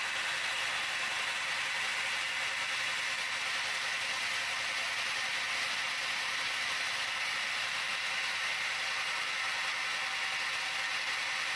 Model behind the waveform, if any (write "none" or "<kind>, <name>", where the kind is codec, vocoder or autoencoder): none